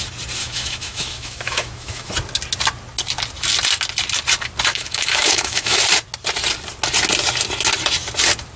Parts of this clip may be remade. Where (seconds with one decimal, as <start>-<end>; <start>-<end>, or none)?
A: 0.4-2.1; 4.7-5.8